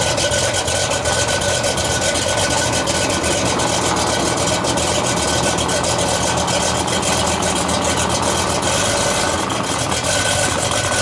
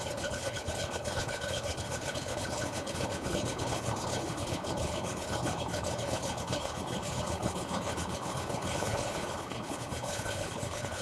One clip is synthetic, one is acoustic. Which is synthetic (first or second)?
second